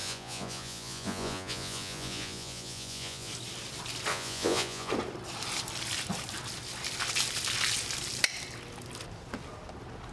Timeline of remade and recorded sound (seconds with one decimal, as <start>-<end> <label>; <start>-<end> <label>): 0.0-3.3 remade; 3.3-4.1 recorded; 4.1-4.9 remade; 4.9-10.1 recorded